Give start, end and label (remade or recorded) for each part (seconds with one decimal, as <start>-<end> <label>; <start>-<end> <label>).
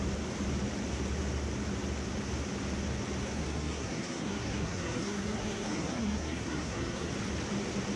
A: 0.0-3.2 recorded; 3.2-7.1 remade; 7.1-8.0 recorded